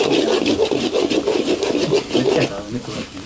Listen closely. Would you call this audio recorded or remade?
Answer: recorded